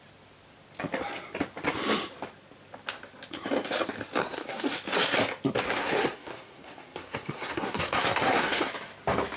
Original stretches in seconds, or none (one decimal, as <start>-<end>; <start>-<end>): 0.0-4.2; 4.7-5.8; 8.7-9.4